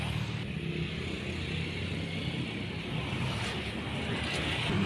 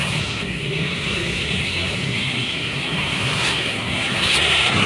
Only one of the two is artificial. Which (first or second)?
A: second